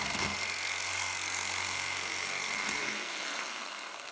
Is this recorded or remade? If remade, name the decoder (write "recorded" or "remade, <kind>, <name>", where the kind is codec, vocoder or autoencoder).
remade, codec, SNAC